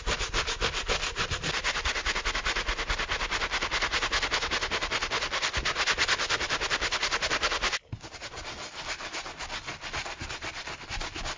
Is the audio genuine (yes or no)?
yes